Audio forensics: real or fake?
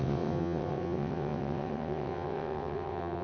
fake